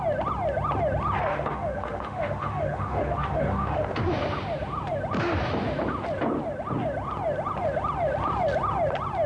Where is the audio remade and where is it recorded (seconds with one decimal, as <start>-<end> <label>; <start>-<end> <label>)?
0.0-1.3 recorded; 1.3-4.0 remade; 4.0-9.3 recorded